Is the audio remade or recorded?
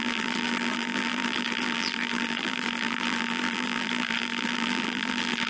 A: remade